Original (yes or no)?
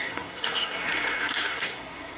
no